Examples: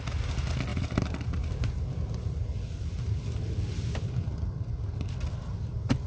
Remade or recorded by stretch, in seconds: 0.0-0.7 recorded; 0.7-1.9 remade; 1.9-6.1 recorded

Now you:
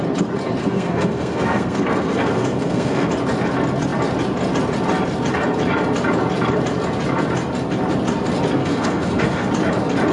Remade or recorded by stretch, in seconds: 0.0-0.6 recorded; 0.6-3.1 remade; 3.1-8.6 recorded; 8.6-9.5 remade; 9.5-10.1 recorded

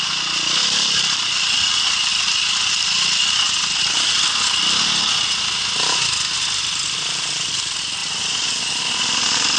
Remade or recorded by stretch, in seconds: 0.0-0.6 recorded; 0.6-1.7 remade; 1.7-2.1 recorded; 2.1-2.7 remade; 2.7-9.6 recorded

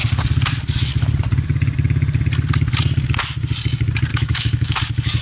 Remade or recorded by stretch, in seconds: 0.0-4.1 recorded; 4.1-4.8 remade; 4.8-5.2 recorded

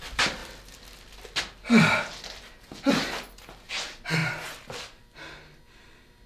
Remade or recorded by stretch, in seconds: 0.0-6.3 recorded